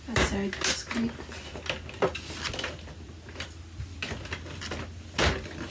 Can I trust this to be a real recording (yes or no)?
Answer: yes